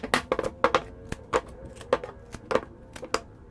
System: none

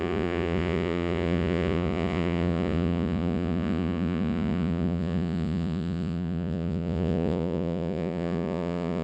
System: vocoder, Vocos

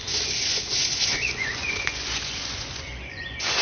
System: vocoder, Vocos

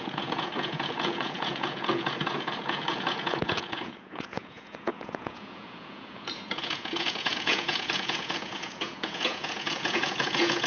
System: vocoder, Vocos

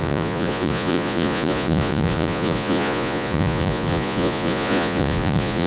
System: vocoder, Vocos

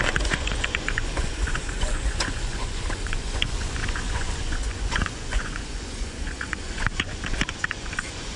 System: vocoder, Vocos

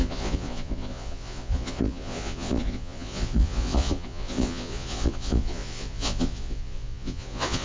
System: vocoder, Vocos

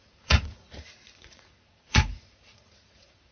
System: vocoder, Vocos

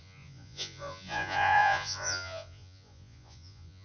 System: vocoder, Vocos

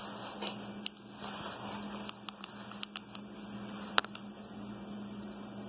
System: none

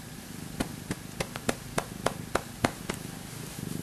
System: none